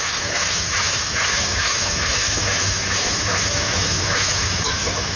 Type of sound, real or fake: fake